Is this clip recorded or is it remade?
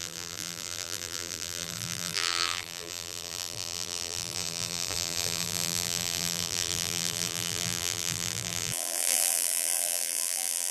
remade